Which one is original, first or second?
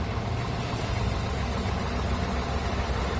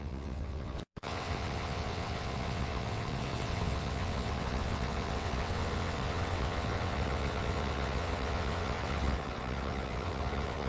first